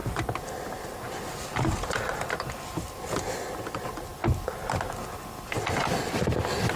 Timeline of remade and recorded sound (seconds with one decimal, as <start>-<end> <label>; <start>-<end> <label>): 0.0-6.8 recorded